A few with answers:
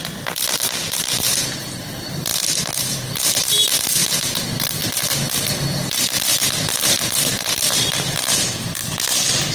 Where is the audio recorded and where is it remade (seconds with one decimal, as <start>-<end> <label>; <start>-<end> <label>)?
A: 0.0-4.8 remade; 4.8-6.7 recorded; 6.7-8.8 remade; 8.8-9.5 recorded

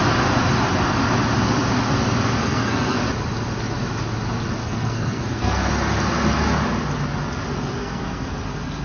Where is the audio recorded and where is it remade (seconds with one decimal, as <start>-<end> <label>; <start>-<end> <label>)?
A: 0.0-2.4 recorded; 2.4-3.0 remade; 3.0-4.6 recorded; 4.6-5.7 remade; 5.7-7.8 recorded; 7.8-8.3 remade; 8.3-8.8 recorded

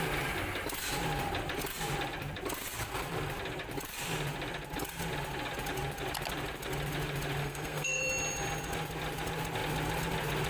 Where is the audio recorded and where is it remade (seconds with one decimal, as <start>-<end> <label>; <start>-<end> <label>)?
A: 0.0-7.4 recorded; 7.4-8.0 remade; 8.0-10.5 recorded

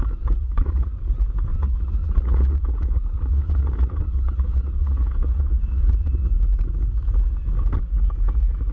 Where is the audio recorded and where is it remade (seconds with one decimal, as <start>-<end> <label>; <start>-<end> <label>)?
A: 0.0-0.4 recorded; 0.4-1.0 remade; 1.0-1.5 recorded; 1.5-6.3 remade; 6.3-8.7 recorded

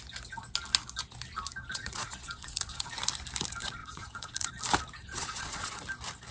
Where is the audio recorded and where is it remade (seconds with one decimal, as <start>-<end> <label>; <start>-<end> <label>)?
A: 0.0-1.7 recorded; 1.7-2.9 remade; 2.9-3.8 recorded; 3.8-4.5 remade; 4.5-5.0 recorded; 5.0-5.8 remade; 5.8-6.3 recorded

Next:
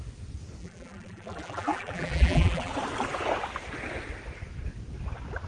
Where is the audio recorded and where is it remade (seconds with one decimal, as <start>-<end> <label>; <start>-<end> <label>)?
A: 0.0-0.6 recorded; 0.6-2.7 remade; 2.7-5.5 recorded

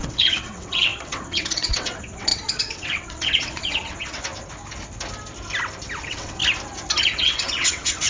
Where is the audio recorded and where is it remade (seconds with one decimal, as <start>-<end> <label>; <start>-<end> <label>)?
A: 0.0-4.3 remade; 4.3-6.0 recorded; 6.0-6.4 remade; 6.4-7.0 recorded; 7.0-8.1 remade

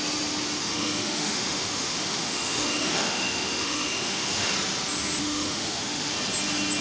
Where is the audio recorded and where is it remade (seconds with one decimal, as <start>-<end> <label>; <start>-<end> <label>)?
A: 0.0-0.6 recorded; 0.6-4.5 remade; 4.5-5.2 recorded; 5.2-6.1 remade; 6.1-6.8 recorded